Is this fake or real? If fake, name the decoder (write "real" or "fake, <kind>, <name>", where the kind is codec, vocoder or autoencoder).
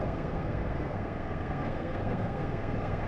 fake, codec, SNAC